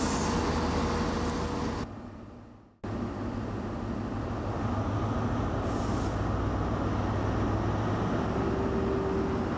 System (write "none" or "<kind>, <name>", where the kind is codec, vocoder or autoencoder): none